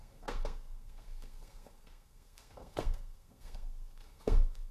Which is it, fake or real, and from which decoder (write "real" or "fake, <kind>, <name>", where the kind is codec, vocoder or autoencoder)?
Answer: fake, codec, SNAC